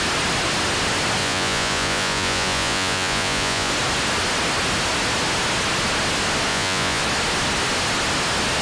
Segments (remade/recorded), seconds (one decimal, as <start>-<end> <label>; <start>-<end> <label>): 0.0-1.2 recorded; 1.2-3.7 remade; 3.7-6.5 recorded; 6.5-7.0 remade; 7.0-8.6 recorded